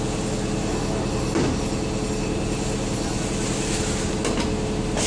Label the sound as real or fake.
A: real